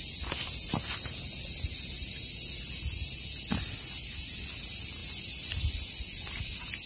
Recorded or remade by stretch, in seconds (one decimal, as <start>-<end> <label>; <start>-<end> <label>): 0.0-6.9 recorded